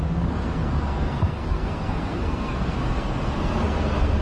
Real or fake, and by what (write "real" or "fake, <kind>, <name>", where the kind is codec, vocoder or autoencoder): fake, codec, SNAC